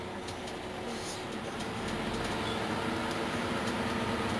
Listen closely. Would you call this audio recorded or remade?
recorded